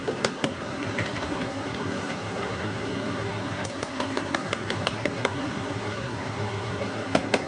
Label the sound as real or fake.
fake